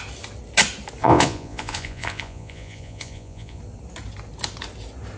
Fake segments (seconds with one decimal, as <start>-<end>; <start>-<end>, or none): 1.0-3.6